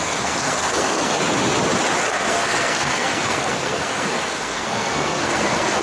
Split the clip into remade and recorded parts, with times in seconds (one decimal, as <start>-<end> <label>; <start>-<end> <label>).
0.0-1.2 remade; 1.2-2.1 recorded; 2.1-5.8 remade